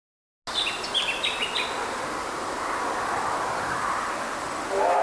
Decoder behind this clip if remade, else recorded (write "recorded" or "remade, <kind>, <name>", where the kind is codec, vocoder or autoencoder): recorded